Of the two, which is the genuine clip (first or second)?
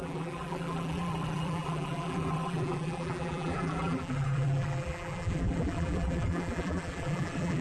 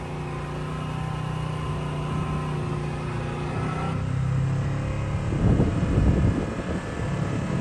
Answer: second